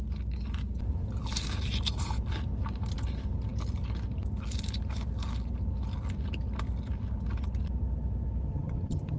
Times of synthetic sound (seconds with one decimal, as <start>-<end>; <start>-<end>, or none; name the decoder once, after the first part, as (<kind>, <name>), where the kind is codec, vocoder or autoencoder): 8.5-9.2 (vocoder, HiFi-GAN)